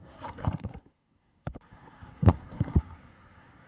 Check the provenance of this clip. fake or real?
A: fake